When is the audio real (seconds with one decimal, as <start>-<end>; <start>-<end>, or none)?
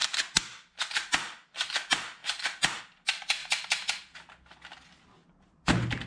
0.0-2.2; 2.8-3.4; 3.9-6.1